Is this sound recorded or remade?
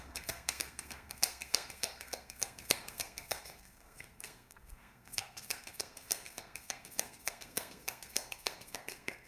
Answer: remade